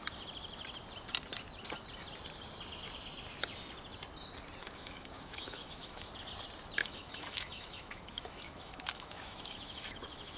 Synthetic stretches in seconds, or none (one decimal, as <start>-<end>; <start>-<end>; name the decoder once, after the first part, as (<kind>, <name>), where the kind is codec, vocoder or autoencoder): 4.6-6.1 (autoencoder, DAC-VAE); 6.8-10.4